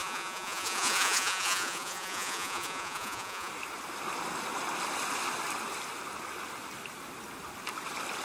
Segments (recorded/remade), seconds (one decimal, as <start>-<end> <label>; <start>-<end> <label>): 0.0-3.5 remade; 3.5-8.2 recorded